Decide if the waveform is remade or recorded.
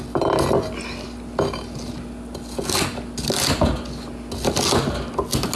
recorded